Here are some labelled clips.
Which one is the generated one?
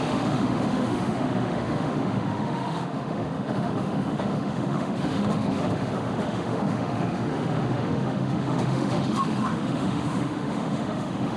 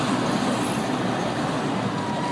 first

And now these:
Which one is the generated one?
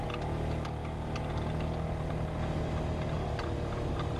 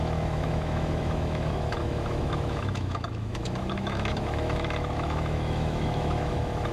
second